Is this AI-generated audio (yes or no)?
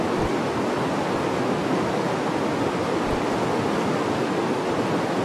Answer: no